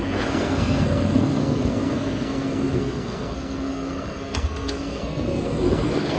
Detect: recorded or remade remade